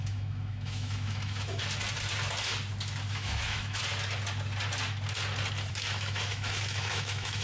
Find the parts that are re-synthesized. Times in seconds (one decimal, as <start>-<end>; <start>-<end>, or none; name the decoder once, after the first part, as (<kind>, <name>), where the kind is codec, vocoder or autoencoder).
0.0-1.6 (autoencoder, DAC-VAE); 3.1-3.8; 5.7-7.4